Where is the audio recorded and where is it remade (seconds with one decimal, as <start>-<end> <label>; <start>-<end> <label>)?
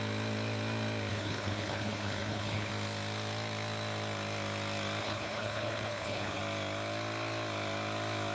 0.0-1.1 recorded; 1.1-2.7 remade; 2.7-5.0 recorded; 5.0-6.4 remade; 6.4-8.3 recorded